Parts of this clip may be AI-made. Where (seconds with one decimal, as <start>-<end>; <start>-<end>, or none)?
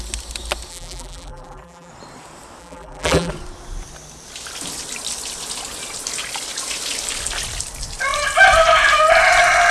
0.7-1.9; 2.6-3.3